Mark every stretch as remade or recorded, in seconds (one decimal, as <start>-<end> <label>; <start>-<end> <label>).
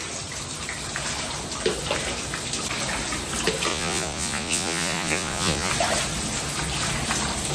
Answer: 0.0-3.7 recorded; 3.7-5.7 remade; 5.7-7.5 recorded